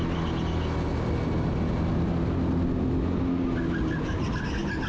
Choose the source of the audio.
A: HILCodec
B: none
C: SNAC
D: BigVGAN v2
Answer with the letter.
B